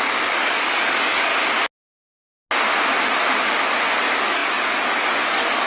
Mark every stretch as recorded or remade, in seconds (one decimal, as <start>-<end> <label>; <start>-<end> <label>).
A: 0.0-1.3 remade; 1.3-4.0 recorded; 4.0-5.7 remade